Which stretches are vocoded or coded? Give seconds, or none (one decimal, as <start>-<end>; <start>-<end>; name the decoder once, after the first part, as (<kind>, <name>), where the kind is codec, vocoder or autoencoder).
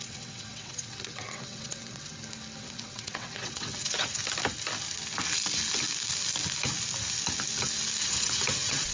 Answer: 0.0-2.1 (vocoder, WaveNeXt); 2.6-4.2; 8.0-8.9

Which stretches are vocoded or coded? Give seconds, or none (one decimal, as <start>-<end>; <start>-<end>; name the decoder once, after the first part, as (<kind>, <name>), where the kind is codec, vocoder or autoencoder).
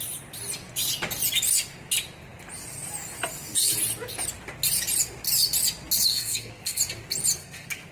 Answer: 6.1-6.8 (codec, SNAC); 7.4-7.9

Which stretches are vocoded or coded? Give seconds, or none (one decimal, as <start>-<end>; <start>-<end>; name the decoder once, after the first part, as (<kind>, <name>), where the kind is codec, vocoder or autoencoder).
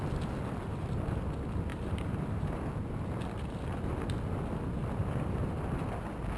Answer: 1.7-2.7 (vocoder, BigVGAN v2); 5.0-5.6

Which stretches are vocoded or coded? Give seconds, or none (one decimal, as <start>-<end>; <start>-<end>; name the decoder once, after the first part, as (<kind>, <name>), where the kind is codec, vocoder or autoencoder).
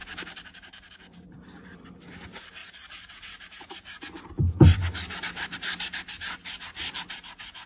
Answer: 0.0-0.9 (vocoder, BigVGAN v2); 2.6-4.0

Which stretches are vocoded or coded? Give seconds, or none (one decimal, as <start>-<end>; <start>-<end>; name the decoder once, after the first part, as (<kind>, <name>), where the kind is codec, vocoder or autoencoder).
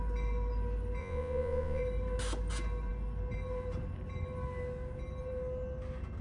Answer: 1.0-1.8 (vocoder, Vocos)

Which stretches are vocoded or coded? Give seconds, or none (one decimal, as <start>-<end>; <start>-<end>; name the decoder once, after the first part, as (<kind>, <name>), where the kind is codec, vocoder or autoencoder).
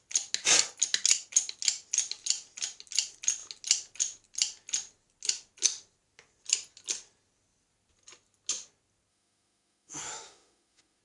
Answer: 9.1-11.0 (autoencoder, DAC-VAE)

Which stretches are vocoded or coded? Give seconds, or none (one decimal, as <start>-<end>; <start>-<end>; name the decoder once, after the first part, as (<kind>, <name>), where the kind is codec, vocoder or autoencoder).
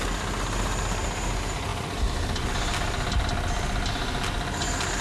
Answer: none